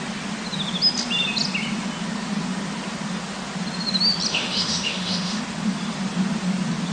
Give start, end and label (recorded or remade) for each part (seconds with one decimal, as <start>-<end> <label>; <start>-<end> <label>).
0.0-4.3 recorded; 4.3-5.4 remade; 5.4-6.9 recorded